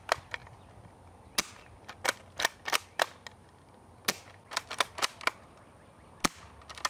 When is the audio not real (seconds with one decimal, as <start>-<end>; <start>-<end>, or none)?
none